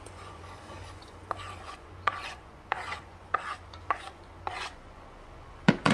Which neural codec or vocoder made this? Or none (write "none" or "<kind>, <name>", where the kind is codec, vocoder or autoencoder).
vocoder, Vocos